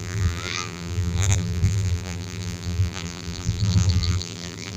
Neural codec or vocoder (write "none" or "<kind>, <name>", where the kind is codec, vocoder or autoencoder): vocoder, BigVGAN v2